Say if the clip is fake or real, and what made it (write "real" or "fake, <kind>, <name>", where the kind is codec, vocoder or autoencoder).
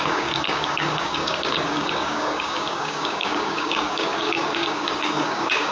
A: fake, codec, DAC